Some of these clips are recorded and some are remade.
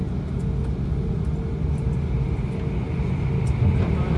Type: recorded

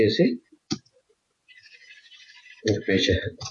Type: remade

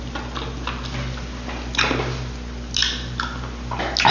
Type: recorded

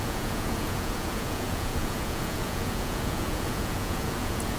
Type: remade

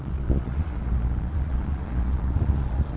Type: remade